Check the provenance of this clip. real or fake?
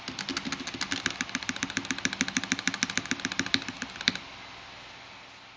real